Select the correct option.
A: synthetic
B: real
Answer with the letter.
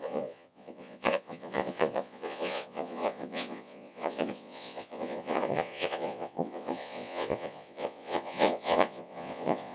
A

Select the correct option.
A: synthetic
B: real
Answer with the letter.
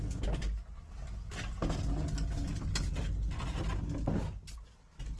B